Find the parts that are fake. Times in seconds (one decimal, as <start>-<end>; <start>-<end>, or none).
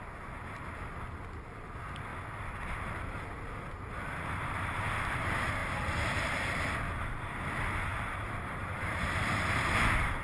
none